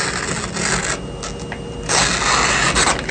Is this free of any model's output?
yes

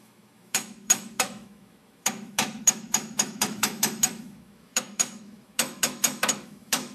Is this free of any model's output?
no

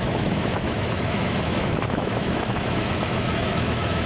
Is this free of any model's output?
no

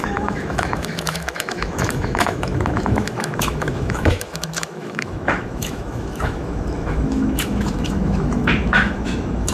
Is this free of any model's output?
no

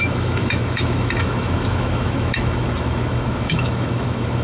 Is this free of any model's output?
no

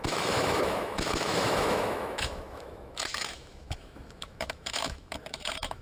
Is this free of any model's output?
no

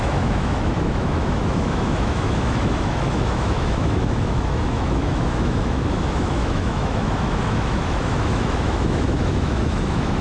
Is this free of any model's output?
no